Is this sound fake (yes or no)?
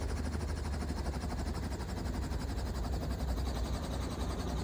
no